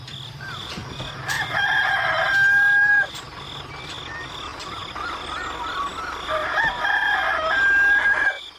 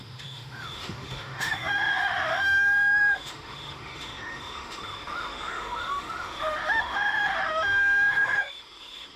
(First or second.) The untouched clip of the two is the first